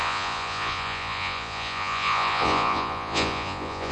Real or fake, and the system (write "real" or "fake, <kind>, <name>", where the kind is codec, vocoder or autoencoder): fake, vocoder, Vocos